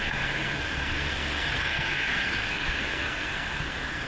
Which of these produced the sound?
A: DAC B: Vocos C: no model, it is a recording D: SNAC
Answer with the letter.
D